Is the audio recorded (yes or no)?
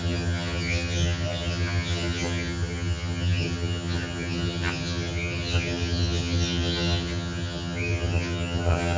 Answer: no